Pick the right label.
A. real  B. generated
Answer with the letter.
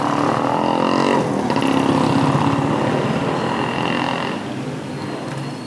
A